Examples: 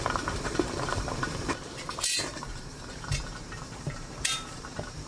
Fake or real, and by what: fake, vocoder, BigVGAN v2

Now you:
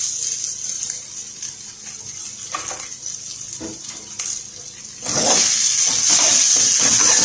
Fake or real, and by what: real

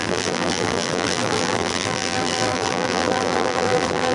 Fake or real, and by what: fake, vocoder, BigVGAN v2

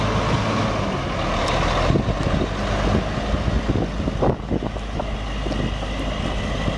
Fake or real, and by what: real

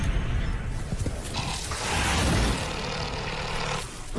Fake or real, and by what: real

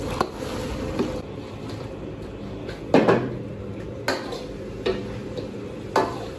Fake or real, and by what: real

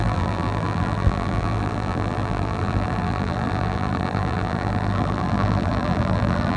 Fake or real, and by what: fake, vocoder, BigVGAN v2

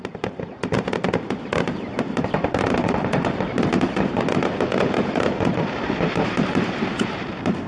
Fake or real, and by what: fake, vocoder, BigVGAN v2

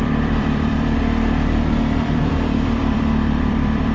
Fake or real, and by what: fake, vocoder, BigVGAN v2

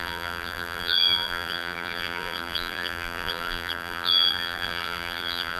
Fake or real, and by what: fake, vocoder, BigVGAN v2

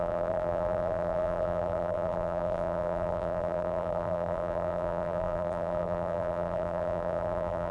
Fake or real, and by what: fake, vocoder, BigVGAN v2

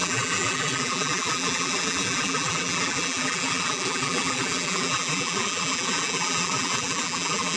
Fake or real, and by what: fake, vocoder, BigVGAN v2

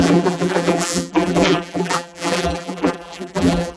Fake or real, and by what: fake, vocoder, BigVGAN v2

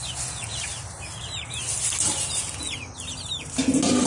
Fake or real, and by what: real